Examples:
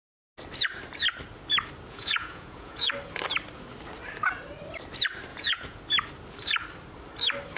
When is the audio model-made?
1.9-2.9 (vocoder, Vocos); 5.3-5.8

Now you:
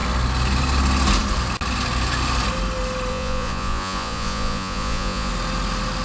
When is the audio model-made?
3.1-5.3 (vocoder, Vocos)

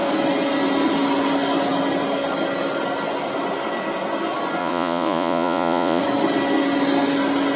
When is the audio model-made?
4.6-6.0 (vocoder, Vocos)

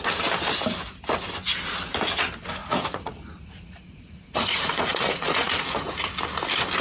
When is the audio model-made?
2.6-5.9 (vocoder, Vocos)

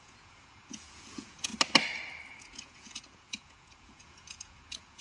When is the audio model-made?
0.0-1.5 (vocoder, Vocos); 2.4-5.0

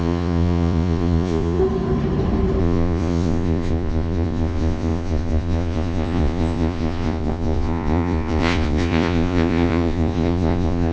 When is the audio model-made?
0.0-1.6 (vocoder, Vocos); 2.6-10.9